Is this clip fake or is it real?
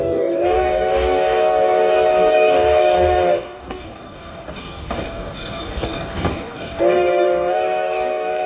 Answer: fake